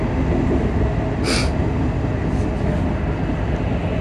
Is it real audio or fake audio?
real